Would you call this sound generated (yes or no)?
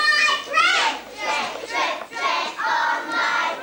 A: no